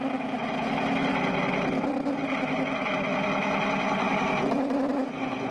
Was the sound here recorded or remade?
recorded